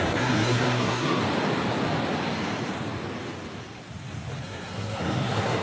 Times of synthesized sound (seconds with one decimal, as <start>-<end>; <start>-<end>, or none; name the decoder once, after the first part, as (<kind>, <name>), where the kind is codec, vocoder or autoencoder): 0.0-1.2 (codec, SNAC); 4.4-5.6

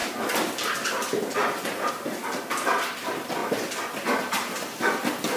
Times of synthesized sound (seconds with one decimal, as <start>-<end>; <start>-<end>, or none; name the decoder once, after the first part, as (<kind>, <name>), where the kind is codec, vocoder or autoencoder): none